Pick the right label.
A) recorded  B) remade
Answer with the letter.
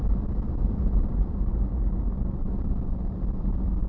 B